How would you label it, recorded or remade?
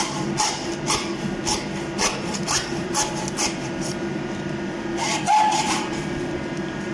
recorded